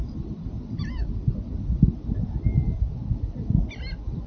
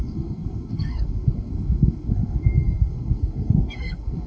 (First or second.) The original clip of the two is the first